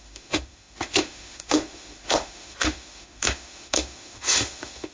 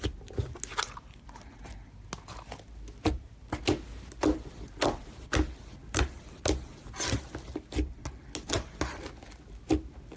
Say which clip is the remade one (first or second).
first